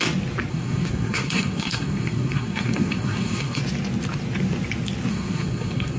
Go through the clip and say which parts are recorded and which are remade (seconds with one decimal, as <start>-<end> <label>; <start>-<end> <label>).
0.0-0.5 recorded; 0.5-3.6 remade; 3.6-5.1 recorded; 5.1-6.0 remade